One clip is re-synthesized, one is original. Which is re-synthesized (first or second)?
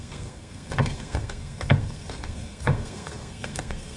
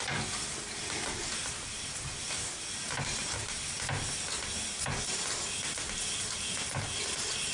first